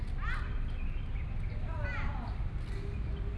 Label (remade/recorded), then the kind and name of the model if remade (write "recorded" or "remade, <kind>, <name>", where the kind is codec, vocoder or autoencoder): recorded